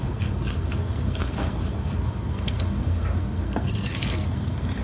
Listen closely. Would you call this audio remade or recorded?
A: remade